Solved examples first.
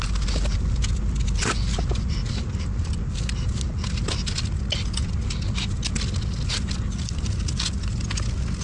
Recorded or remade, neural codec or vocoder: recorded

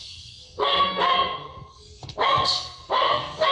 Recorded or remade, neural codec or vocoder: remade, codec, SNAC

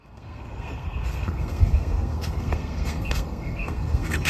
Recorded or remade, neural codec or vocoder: remade, codec, SNAC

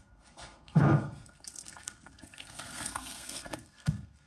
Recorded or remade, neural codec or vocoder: remade, codec, SNAC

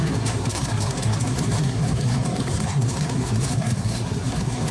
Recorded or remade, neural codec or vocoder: remade, codec, SNAC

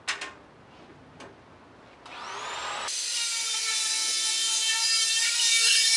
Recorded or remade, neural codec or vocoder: recorded